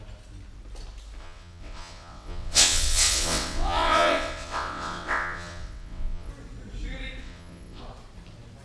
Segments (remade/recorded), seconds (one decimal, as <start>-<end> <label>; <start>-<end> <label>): 0.0-1.2 recorded; 1.2-6.3 remade; 6.3-7.2 recorded; 7.2-7.8 remade; 7.8-8.6 recorded